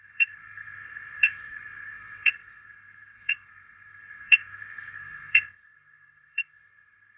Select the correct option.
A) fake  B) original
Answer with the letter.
A